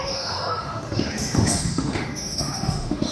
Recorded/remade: remade